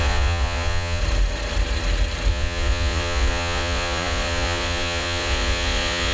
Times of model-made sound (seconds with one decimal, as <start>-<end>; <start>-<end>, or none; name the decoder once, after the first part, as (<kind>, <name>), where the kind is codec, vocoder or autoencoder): 0.0-1.0 (vocoder, Vocos); 2.3-6.1